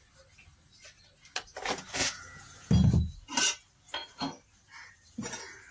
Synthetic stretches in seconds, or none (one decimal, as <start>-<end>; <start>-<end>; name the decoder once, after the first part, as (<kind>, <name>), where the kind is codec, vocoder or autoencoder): 2.0-2.7 (vocoder, Vocos)